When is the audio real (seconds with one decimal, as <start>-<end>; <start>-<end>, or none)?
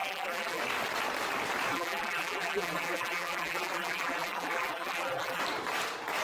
0.6-1.7; 5.4-6.2